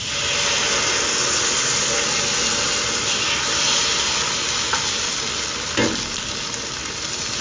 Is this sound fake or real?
real